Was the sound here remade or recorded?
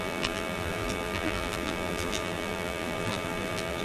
remade